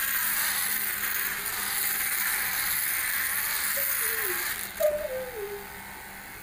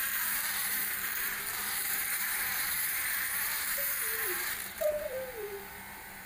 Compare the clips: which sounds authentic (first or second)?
first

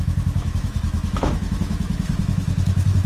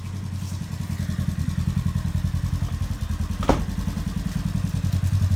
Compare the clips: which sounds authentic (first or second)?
second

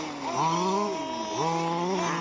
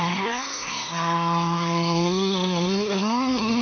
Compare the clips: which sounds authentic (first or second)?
first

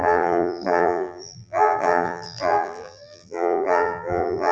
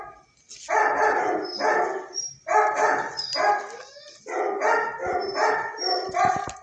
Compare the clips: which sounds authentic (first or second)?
second